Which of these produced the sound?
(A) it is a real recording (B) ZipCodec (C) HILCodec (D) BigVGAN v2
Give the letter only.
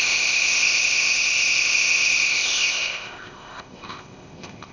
B